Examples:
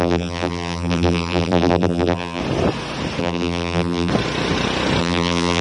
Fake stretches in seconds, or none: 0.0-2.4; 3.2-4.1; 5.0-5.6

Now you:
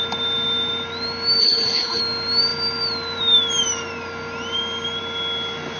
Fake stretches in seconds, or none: 1.4-2.0

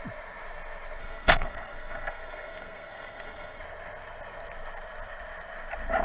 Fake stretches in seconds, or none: 1.0-3.6

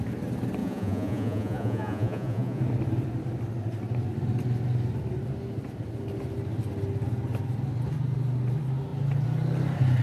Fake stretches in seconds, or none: 0.6-2.6

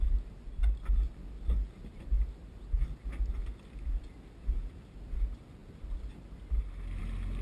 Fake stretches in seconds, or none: 1.9-2.8

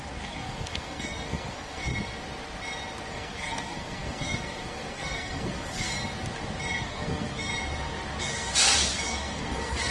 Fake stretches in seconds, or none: 0.0-1.9; 3.1-5.9; 6.7-7.5; 8.2-9.9